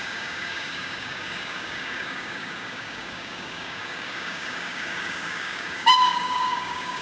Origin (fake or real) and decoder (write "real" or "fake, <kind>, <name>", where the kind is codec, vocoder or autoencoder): fake, codec, DAC